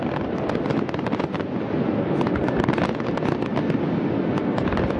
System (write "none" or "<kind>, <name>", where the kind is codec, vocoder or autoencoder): none